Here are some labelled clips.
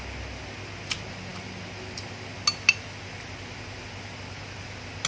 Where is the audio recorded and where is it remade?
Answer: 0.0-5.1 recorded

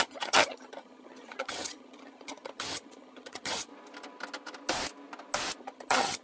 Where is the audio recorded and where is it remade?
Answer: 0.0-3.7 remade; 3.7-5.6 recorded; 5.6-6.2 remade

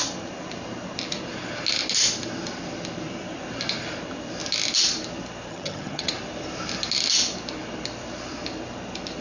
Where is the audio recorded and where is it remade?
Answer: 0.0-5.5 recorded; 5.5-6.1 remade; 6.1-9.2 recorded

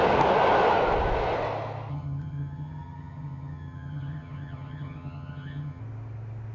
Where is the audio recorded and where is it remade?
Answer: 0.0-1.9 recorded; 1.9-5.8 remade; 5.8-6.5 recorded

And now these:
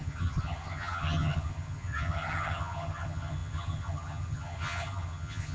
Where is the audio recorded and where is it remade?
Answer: 0.0-5.5 remade

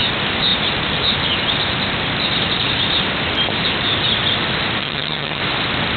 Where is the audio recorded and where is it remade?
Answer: 0.0-4.8 recorded; 4.8-5.4 remade; 5.4-6.0 recorded

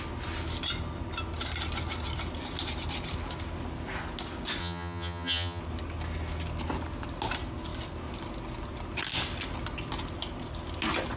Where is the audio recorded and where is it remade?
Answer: 0.0-4.6 recorded; 4.6-5.6 remade; 5.6-11.2 recorded

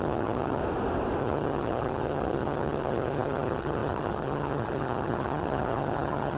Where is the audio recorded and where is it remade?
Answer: 0.0-0.6 remade; 0.6-1.2 recorded; 1.2-6.4 remade